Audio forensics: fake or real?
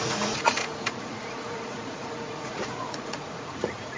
fake